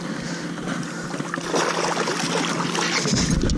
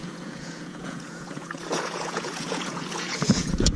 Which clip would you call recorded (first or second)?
first